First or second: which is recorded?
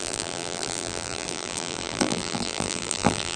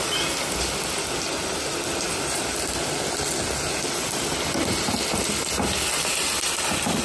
second